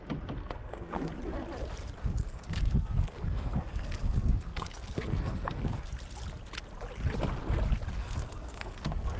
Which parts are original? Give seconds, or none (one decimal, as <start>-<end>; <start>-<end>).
0.0-0.4; 1.1-2.0; 5.9-8.0